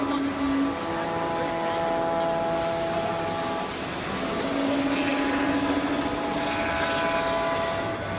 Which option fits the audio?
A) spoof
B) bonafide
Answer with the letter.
B